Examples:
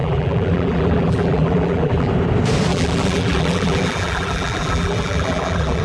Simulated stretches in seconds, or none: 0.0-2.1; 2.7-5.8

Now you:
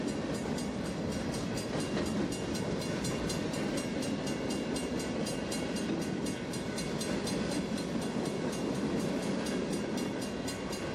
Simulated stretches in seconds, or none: none

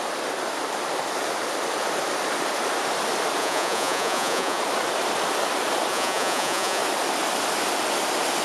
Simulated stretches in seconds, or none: 3.4-4.6; 5.9-6.8